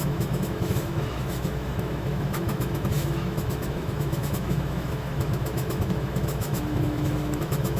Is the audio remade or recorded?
remade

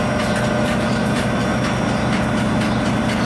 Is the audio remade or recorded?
recorded